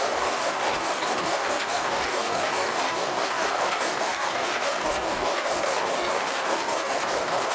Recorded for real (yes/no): no